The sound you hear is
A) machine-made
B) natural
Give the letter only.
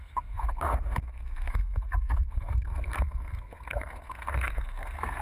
A